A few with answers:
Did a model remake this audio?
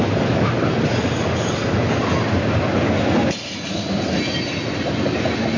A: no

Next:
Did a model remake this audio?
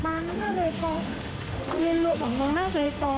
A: yes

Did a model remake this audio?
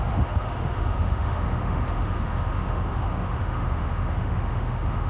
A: yes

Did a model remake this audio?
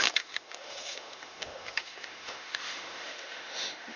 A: yes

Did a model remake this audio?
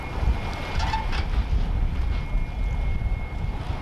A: no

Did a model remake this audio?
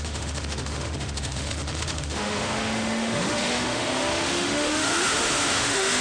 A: yes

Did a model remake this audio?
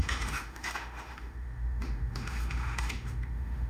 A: yes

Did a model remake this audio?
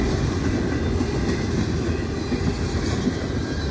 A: no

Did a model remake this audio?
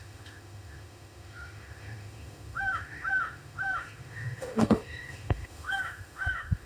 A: yes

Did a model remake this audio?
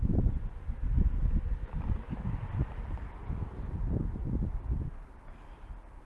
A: no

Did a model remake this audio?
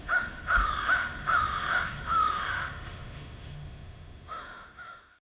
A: yes